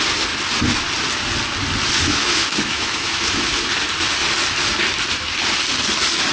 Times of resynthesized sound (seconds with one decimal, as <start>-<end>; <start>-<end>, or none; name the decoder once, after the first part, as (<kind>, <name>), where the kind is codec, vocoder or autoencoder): 2.1-3.5 (autoencoder, DAC-VAE)